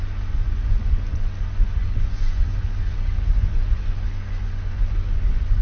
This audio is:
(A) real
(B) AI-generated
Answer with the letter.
B